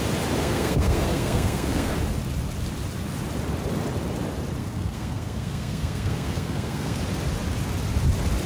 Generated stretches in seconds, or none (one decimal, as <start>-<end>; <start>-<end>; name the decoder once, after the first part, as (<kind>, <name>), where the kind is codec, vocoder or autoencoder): 0.4-1.9 (codec, SNAC); 4.6-7.0